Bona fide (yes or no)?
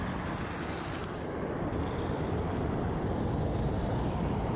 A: yes